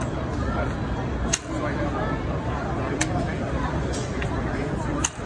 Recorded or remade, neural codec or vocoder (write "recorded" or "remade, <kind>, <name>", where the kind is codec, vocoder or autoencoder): recorded